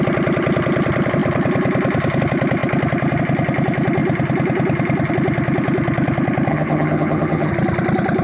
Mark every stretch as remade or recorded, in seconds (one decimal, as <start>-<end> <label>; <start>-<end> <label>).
0.0-6.5 recorded; 6.5-7.5 remade; 7.5-8.2 recorded